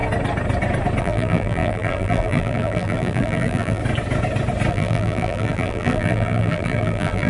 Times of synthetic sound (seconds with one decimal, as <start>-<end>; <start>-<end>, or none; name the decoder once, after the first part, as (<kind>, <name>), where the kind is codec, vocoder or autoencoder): 1.0-3.8 (vocoder, BigVGAN v2); 4.7-7.3